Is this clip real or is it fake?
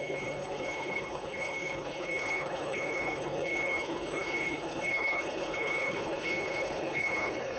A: fake